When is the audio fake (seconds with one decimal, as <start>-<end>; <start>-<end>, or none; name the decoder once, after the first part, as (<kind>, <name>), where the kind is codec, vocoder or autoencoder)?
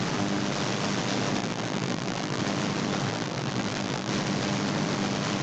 1.4-2.4 (vocoder, BigVGAN v2); 3.1-4.1